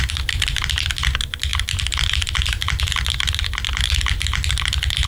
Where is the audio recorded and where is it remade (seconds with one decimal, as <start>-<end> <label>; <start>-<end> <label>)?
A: 0.0-5.1 recorded